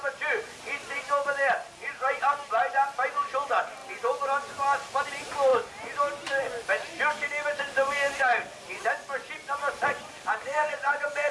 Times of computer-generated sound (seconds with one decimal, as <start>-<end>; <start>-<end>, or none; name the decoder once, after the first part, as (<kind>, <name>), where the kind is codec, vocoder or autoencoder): 0.0-3.8 (vocoder, BigVGAN v2); 5.1-5.5; 7.6-8.3; 10.1-11.3